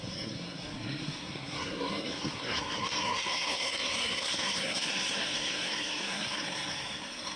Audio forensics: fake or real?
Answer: fake